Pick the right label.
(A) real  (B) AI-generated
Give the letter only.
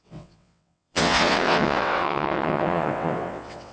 B